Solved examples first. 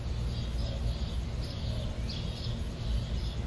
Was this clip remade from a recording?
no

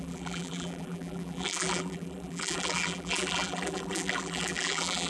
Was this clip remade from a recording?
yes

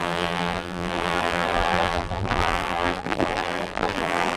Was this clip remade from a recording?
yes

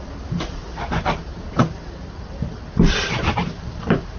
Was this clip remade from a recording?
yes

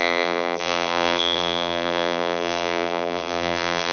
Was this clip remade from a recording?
yes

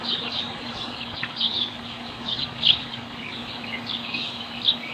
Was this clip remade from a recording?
yes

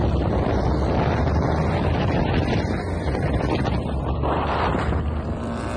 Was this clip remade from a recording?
yes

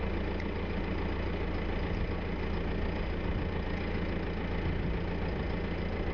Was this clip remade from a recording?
no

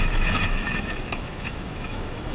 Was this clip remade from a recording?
yes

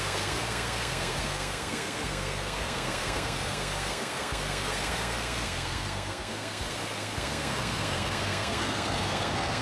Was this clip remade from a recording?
yes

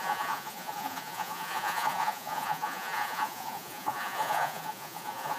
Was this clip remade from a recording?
yes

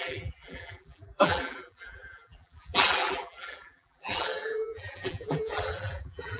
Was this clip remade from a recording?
yes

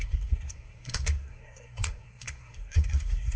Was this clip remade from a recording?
yes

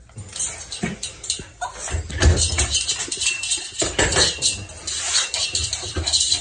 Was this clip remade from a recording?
no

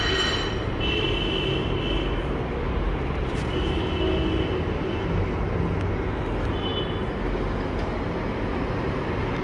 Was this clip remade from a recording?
no